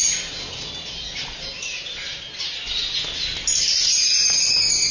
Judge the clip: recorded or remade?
recorded